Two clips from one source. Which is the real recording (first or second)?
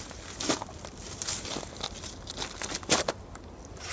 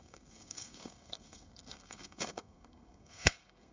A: first